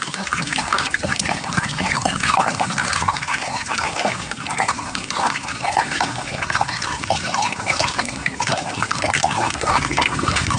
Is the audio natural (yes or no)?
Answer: no